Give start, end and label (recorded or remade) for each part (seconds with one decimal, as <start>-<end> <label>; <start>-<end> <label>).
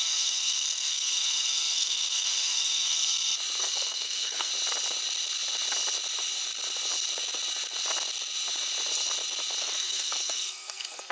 0.0-3.1 remade; 3.1-3.6 recorded; 3.6-4.5 remade; 4.5-9.6 recorded; 9.6-11.1 remade